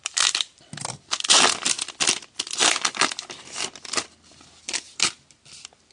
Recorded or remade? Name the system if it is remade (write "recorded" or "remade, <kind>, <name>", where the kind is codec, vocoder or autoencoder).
remade, vocoder, BigVGAN v2